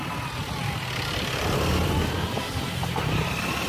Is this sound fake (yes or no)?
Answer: no